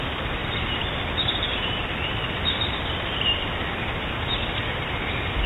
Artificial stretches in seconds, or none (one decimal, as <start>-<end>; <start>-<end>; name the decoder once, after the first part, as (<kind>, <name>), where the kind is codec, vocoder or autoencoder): 0.4-3.7 (vocoder, BigVGAN v2)